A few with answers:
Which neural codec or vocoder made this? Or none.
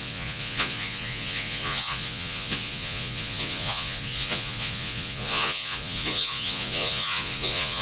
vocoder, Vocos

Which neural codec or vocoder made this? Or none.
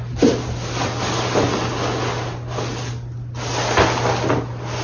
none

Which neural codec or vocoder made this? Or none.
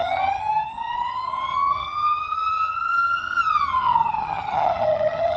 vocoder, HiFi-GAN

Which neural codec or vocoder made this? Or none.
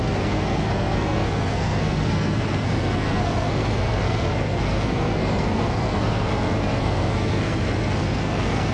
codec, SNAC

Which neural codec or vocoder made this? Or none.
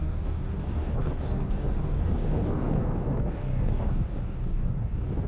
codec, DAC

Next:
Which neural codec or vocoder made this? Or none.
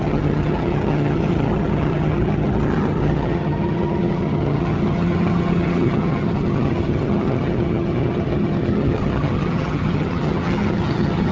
vocoder, HiFi-GAN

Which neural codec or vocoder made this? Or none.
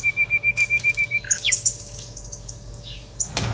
codec, DAC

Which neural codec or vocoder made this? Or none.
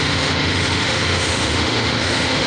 autoencoder, DAC-VAE